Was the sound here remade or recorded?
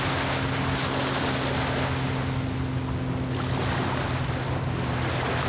recorded